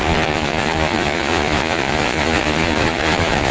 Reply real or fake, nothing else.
fake